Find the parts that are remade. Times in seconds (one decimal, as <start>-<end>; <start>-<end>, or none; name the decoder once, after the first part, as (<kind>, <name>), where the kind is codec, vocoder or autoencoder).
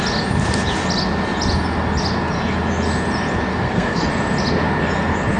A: 3.5-4.0 (codec, SNAC)